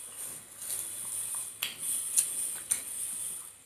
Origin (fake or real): real